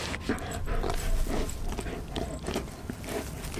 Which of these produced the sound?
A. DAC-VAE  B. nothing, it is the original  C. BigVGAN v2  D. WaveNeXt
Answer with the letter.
B